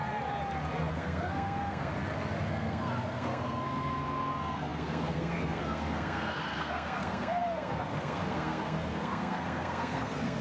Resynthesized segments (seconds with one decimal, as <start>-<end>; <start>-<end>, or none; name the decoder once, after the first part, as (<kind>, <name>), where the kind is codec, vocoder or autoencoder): 0.9-1.9 (codec, SNAC); 2.5-10.4